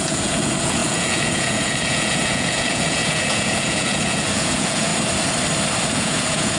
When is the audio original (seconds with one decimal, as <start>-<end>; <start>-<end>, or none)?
4.9-5.9